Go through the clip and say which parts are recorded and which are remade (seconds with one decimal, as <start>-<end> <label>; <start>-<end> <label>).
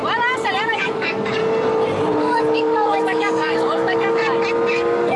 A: 0.0-0.7 recorded; 0.7-1.4 remade; 1.4-2.2 recorded; 2.2-4.2 remade; 4.2-4.7 recorded; 4.7-5.2 remade